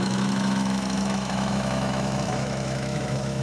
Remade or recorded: remade